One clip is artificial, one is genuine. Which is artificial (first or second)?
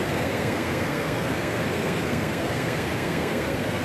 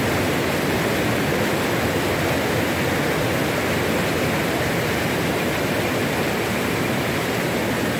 first